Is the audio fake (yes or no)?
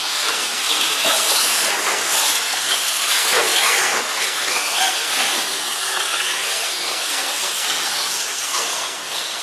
yes